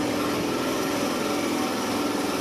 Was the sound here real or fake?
real